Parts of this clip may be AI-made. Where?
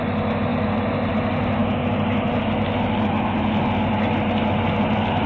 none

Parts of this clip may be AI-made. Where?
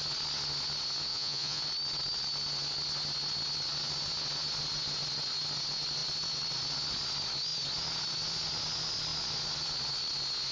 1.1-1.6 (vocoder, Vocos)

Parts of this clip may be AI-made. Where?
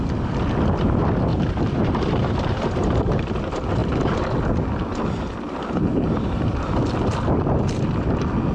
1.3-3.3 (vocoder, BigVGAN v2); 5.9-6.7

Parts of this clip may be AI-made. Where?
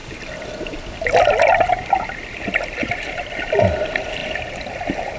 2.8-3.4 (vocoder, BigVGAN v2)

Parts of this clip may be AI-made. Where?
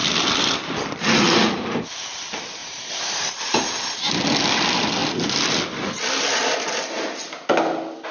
2.6-3.6 (vocoder, BigVGAN v2)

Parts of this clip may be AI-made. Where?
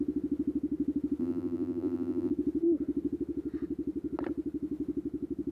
1.2-2.3 (vocoder, BigVGAN v2)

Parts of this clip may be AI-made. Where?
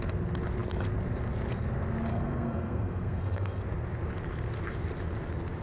2.1-3.6 (codec, SNAC)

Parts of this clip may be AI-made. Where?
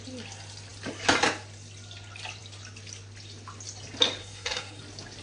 4.2-4.8 (codec, SNAC)